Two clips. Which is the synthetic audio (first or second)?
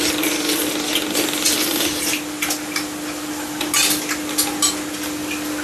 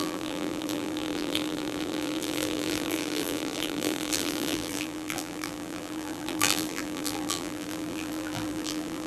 second